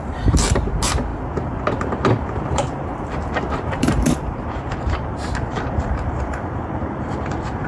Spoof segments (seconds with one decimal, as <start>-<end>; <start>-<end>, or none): 0.0-7.7